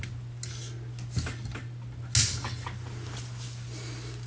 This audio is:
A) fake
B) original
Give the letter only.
B